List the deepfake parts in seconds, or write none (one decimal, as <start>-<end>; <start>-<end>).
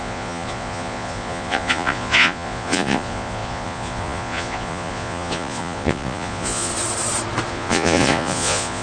0.0-6.7; 7.5-8.8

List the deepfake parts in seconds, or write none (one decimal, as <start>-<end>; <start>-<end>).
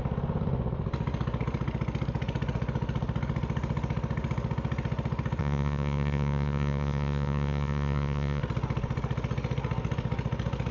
5.4-8.4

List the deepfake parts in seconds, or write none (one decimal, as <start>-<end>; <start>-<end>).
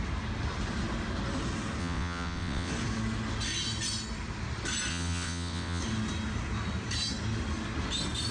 1.8-2.7; 4.9-5.8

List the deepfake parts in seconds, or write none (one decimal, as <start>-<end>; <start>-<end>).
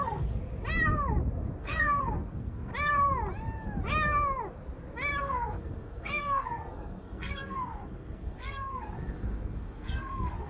0.0-0.4; 1.6-2.7; 5.2-10.5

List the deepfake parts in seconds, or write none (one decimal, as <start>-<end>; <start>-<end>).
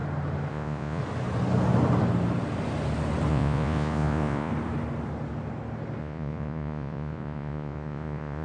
0.5-1.0; 3.3-4.5; 6.0-8.4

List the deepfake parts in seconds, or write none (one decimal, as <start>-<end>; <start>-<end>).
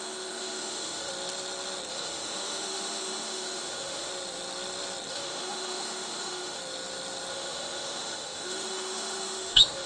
0.0-1.1; 1.9-4.1; 5.1-6.6; 7.3-9.9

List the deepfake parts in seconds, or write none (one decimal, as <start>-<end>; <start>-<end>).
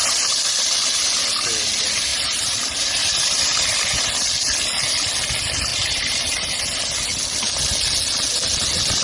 2.1-4.1; 5.7-6.6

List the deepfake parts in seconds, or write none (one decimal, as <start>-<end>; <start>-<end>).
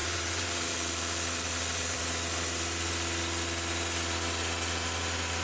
0.0-2.0